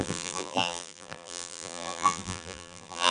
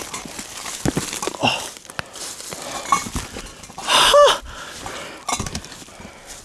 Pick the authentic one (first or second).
second